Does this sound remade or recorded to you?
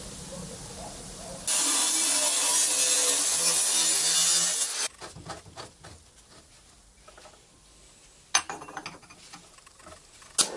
recorded